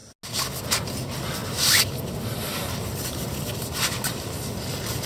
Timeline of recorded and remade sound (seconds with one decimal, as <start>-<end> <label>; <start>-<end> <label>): 0.0-5.1 recorded